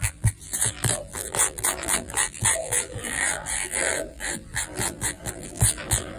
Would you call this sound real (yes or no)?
no